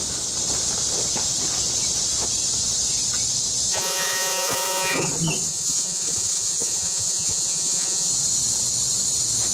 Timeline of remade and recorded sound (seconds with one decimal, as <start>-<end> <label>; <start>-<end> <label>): 0.0-3.7 recorded; 3.7-5.1 remade; 5.1-5.5 recorded; 5.5-8.1 remade; 8.1-9.5 recorded